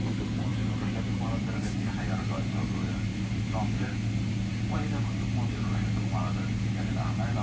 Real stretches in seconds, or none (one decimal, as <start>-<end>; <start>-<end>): 0.0-7.4